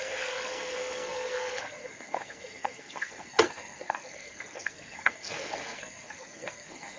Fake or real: fake